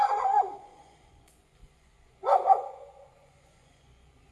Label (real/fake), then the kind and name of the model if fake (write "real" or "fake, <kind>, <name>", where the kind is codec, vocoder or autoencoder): fake, vocoder, Vocos